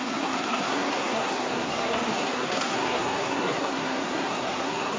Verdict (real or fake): fake